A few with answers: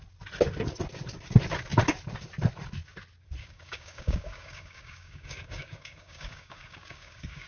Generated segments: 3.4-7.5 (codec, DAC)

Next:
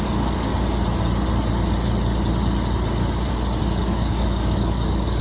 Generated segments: 0.0-0.5 (codec, DAC); 3.6-5.2

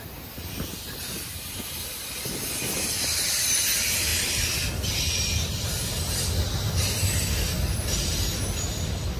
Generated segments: none

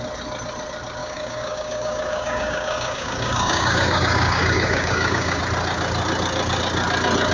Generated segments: 1.0-5.4 (codec, DAC)

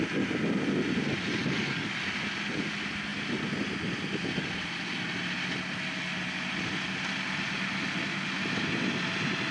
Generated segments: 1.4-2.0 (codec, DAC)